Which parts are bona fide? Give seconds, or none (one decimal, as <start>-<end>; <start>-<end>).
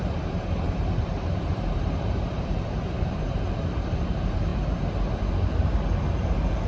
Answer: 4.5-5.5